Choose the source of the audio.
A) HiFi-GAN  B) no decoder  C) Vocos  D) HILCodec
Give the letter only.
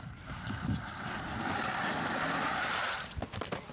B